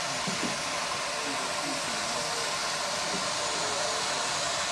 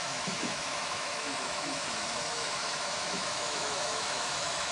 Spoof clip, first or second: second